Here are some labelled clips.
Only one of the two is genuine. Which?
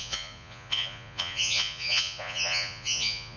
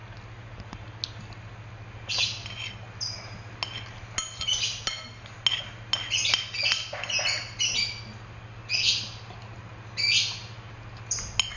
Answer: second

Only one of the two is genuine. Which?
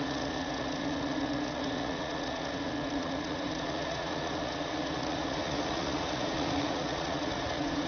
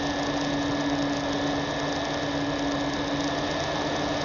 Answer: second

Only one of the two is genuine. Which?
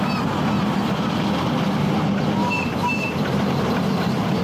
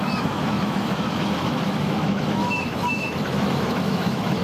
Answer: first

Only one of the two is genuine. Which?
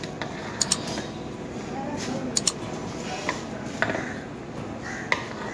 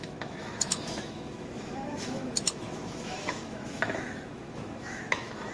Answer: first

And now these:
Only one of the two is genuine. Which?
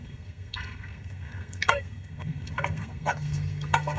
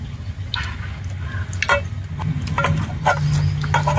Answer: second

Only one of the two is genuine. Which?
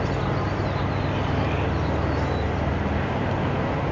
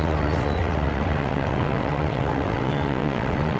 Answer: first